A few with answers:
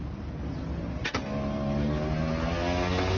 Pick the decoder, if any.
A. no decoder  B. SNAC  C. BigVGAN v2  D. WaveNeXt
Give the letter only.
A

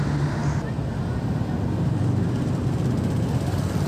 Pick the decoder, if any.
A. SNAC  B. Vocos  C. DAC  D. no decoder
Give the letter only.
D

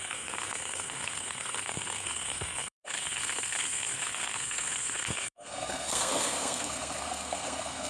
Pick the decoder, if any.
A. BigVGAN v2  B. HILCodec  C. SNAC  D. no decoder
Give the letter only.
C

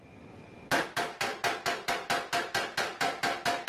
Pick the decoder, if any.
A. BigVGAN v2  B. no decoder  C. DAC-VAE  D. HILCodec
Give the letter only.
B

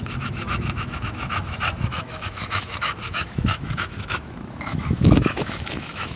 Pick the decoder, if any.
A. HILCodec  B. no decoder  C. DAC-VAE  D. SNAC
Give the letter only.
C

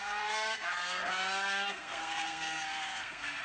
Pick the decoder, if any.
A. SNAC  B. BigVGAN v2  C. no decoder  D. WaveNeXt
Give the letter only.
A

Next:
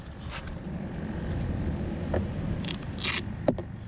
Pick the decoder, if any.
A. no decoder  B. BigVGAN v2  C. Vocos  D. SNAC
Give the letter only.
A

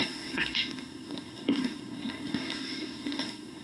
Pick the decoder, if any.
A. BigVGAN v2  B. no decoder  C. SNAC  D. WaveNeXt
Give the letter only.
C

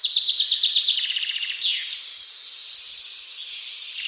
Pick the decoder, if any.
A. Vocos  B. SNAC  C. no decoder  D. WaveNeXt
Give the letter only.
C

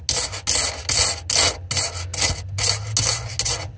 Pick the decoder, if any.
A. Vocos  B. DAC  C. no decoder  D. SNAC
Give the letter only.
C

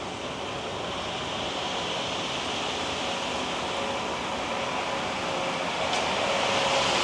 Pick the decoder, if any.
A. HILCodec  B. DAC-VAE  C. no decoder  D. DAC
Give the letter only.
C